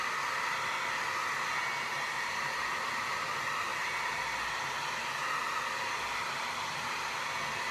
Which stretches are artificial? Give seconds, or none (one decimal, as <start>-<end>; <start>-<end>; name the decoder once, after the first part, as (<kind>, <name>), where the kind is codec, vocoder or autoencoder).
none